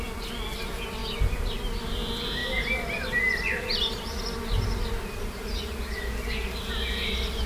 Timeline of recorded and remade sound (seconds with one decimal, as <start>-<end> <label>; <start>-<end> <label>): 0.0-7.5 recorded

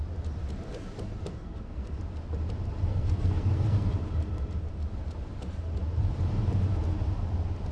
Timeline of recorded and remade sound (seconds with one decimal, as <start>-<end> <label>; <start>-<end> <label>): 0.0-1.2 recorded; 1.2-2.0 remade; 2.0-2.9 recorded; 2.9-3.9 remade; 3.9-7.7 recorded